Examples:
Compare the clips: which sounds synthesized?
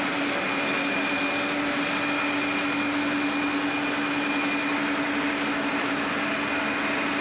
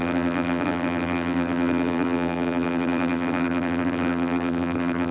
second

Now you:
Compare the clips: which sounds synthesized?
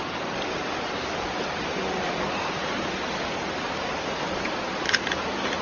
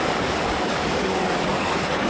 second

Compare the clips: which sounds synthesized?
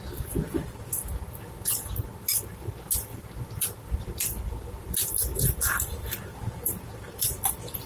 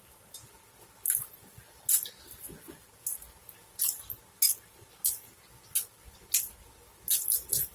first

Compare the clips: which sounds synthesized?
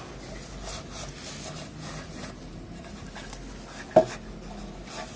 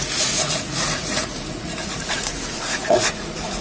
second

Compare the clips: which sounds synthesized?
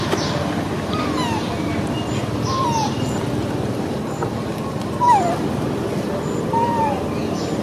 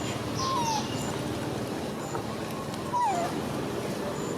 first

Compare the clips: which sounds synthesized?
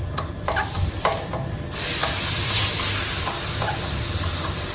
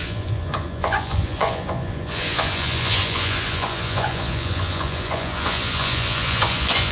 second